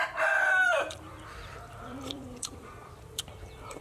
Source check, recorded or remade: remade